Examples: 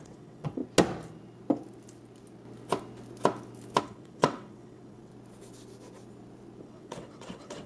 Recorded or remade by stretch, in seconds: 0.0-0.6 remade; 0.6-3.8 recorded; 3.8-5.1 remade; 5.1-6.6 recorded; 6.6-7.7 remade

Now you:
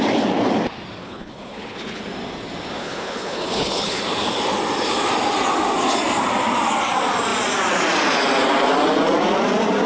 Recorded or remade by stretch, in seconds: 0.0-1.0 recorded; 1.0-2.0 remade; 2.0-2.8 recorded; 2.8-4.0 remade; 4.0-9.9 recorded

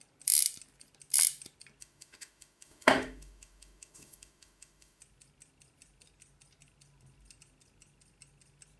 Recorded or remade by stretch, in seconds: 0.0-1.8 recorded; 1.8-5.0 remade; 5.0-8.8 recorded